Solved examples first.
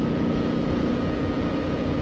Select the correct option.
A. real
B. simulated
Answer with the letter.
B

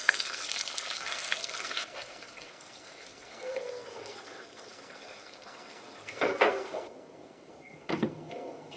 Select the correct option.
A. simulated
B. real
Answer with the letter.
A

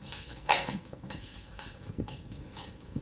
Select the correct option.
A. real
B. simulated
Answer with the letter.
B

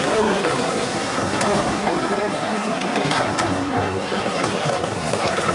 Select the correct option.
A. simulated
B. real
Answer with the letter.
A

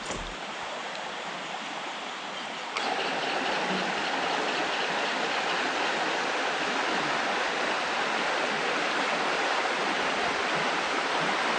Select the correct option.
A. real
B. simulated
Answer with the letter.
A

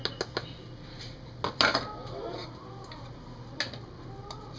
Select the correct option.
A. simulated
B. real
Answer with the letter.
B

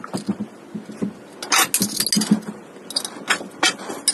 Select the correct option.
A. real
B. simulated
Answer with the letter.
A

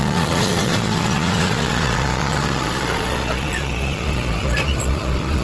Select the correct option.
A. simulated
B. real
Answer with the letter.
A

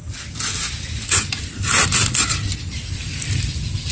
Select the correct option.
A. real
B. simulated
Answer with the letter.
A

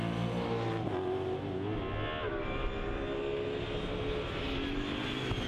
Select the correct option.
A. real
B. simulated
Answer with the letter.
A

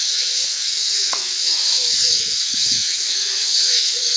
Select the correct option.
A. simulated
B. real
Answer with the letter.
A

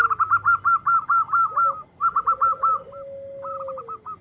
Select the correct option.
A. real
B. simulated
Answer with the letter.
A